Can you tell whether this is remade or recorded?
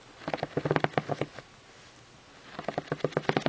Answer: recorded